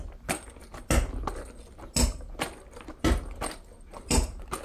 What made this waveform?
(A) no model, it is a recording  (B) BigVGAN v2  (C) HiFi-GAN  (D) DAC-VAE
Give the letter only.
A